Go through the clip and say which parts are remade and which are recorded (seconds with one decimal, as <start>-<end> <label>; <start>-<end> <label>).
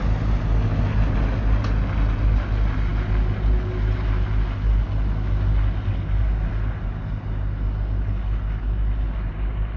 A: 0.0-9.8 recorded